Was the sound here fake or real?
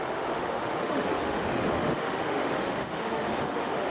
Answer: fake